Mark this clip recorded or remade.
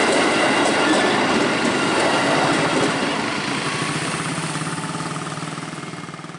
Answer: recorded